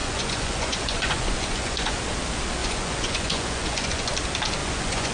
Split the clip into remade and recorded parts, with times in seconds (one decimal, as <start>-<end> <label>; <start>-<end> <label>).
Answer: 0.0-2.0 remade; 2.0-2.6 recorded; 2.6-4.1 remade; 4.1-4.6 recorded; 4.6-5.1 remade